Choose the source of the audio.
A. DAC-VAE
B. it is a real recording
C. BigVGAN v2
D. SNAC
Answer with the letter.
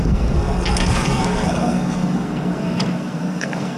D